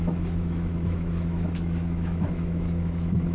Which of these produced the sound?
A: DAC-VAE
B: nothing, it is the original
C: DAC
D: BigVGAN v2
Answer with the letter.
A